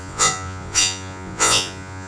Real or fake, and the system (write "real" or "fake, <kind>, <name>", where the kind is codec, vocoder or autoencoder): fake, vocoder, Vocos